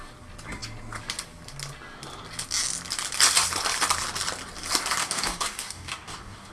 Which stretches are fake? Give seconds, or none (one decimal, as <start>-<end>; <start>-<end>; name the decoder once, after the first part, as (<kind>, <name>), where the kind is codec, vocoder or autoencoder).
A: 5.0-6.5 (codec, DAC)